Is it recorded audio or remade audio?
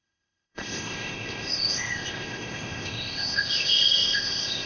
remade